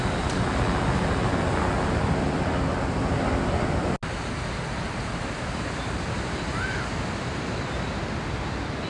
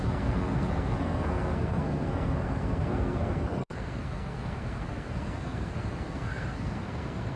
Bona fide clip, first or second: first